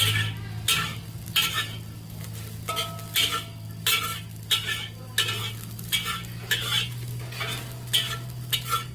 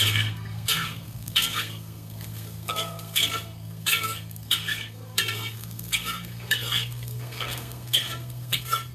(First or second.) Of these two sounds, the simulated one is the second